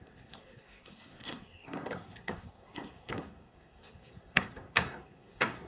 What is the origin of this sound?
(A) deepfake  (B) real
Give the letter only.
A